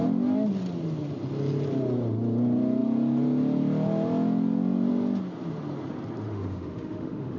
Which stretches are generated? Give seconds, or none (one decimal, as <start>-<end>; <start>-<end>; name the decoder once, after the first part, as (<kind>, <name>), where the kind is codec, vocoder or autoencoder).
6.3-7.4 (autoencoder, DAC-VAE)